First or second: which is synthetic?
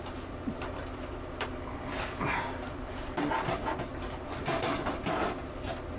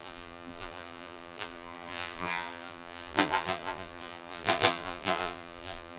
second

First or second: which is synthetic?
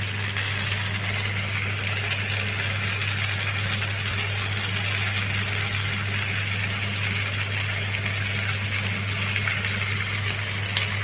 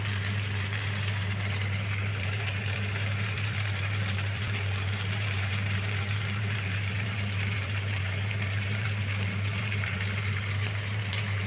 second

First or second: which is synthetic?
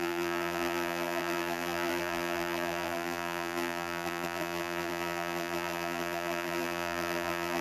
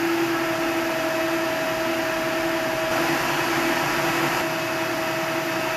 first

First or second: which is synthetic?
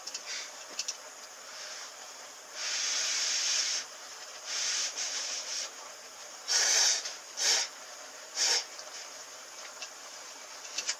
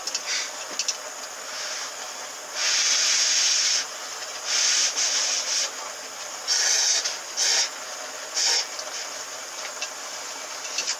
first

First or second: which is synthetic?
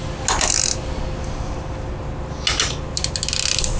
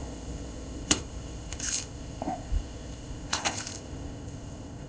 second